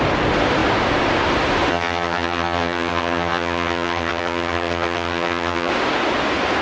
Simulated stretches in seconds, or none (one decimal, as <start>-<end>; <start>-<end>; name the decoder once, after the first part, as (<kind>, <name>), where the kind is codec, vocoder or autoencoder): 1.7-5.7 (vocoder, HiFi-GAN)